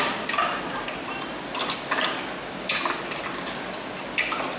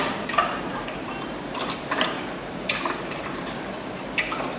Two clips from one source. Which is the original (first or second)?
first